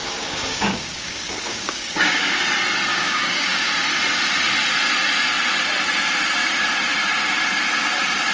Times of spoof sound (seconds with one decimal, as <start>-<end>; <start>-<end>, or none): 0.0-2.4; 2.9-3.7